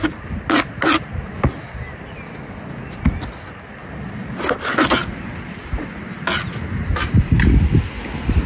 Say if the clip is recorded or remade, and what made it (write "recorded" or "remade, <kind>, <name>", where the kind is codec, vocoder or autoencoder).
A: recorded